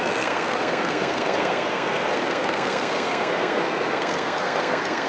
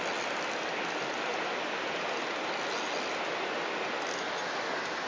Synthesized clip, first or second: first